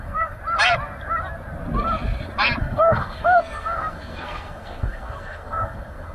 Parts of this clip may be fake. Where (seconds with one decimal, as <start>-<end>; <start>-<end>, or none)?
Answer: 0.0-0.4; 2.6-6.1